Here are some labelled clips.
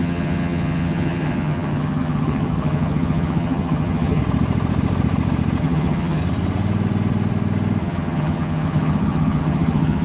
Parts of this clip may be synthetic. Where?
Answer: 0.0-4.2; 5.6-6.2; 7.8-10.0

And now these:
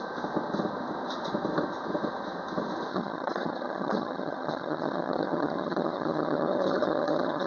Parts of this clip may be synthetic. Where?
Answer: 2.9-7.5

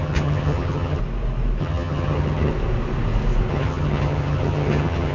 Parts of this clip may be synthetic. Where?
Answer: 0.0-1.0; 1.6-2.5; 3.5-5.1

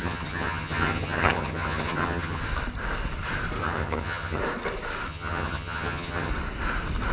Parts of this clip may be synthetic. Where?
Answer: 0.0-2.4; 3.6-4.4; 5.1-6.3

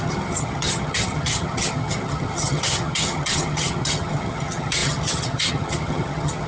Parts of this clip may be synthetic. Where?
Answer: 0.0-6.5